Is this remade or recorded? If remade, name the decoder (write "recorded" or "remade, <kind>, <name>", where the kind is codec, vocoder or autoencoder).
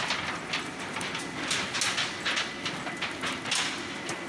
recorded